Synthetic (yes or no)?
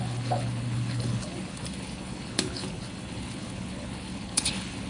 yes